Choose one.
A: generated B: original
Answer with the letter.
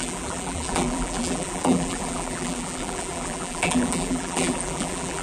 A